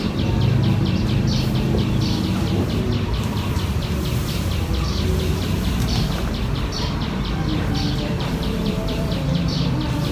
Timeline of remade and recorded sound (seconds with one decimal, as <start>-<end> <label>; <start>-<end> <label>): 0.0-10.1 remade